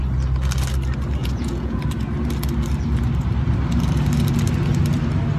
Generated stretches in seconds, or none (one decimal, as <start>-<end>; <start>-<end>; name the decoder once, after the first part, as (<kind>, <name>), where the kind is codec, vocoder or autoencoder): 1.2-1.8 (vocoder, Vocos)